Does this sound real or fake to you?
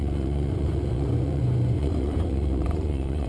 fake